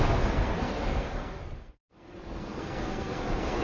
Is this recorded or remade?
remade